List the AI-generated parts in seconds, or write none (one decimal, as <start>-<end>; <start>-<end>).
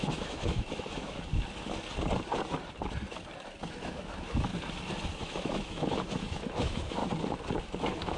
0.0-1.3; 3.7-4.5; 5.2-7.0; 7.6-8.2